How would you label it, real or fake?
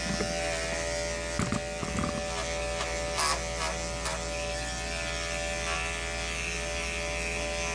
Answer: real